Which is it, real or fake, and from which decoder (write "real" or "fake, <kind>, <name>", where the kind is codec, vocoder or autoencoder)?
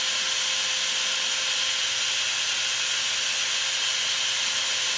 real